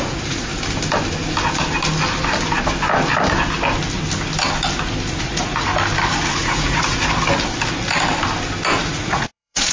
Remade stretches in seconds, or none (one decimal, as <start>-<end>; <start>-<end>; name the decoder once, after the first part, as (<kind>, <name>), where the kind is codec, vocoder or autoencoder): 0.0-0.5 (vocoder, Vocos); 5.1-5.7; 6.3-7.0; 8.9-9.7